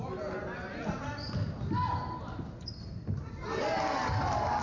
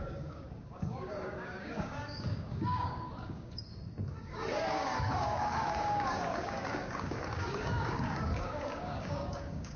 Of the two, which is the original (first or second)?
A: first